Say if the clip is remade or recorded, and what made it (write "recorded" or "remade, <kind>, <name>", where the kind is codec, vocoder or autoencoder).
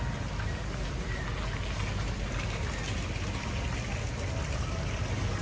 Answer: recorded